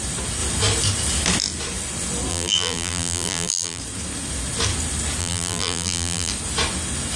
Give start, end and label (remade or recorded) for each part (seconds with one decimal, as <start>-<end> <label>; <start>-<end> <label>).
0.0-2.3 recorded; 2.3-3.8 remade; 3.8-5.2 recorded; 5.2-6.3 remade; 6.3-7.2 recorded